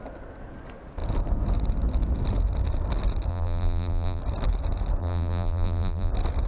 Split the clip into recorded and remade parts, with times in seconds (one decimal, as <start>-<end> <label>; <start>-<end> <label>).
0.0-3.3 recorded; 3.3-4.2 remade; 4.2-5.0 recorded; 5.0-6.1 remade; 6.1-6.5 recorded